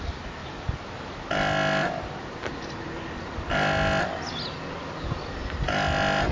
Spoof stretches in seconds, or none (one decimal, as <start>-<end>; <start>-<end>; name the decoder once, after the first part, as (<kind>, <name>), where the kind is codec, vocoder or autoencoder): none